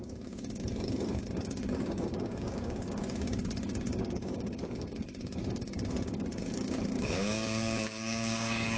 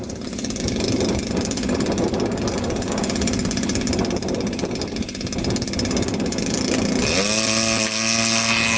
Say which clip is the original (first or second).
second